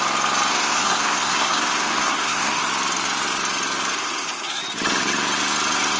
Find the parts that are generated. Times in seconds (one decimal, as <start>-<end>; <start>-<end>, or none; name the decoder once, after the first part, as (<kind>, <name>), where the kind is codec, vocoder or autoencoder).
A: 0.5-2.6 (codec, SNAC); 4.0-4.6

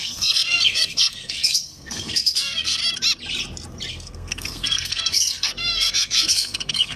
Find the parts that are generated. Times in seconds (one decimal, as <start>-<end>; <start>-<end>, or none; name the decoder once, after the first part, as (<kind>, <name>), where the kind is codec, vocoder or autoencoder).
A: 0.0-2.8 (codec, SNAC); 3.9-7.0

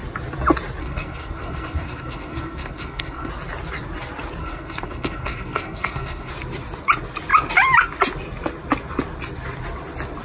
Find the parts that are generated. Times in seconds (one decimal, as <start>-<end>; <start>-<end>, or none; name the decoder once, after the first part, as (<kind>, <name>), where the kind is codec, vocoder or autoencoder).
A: 0.8-3.3 (codec, SNAC); 4.4-6.3

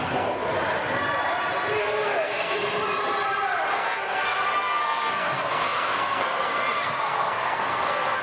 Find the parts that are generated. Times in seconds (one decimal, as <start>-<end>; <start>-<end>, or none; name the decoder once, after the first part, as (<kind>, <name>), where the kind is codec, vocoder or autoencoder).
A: 0.0-0.4 (codec, SNAC); 1.8-2.6; 3.7-8.2

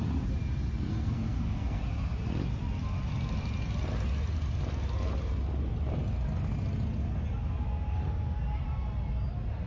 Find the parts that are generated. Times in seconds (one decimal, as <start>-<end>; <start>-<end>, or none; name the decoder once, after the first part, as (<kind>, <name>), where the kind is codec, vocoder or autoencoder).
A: 0.9-1.8 (codec, SNAC)

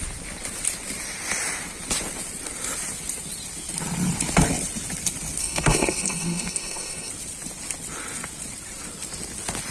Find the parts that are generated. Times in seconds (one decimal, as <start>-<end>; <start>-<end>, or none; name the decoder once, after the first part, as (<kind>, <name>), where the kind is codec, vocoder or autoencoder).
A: 5.4-7.1 (codec, SNAC)

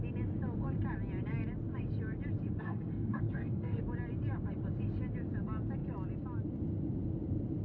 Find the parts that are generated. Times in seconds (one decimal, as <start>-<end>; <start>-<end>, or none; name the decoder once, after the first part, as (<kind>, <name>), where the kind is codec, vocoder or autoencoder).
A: 2.6-3.8 (codec, SNAC)